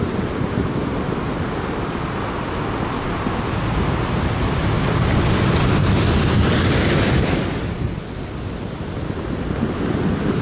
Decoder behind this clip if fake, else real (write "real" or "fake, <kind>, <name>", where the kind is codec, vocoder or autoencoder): real